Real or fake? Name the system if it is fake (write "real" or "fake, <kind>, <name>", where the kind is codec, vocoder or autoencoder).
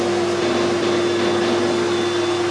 real